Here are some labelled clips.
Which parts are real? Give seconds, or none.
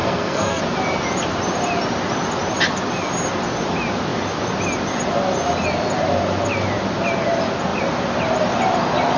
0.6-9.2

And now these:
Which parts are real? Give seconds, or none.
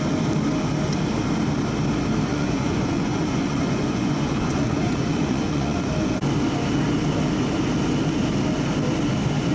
0.0-2.3; 5.9-9.5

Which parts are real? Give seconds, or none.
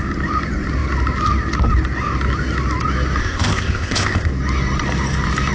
0.0-3.2; 4.3-5.5